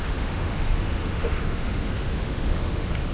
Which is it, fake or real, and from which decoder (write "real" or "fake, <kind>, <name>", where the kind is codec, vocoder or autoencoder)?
fake, autoencoder, DAC-VAE